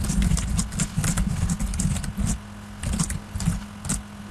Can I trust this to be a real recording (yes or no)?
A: yes